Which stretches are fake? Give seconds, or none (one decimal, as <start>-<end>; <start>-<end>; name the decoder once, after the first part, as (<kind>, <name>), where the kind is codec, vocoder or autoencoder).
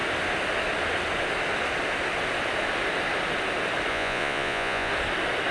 3.9-4.9 (vocoder, Vocos)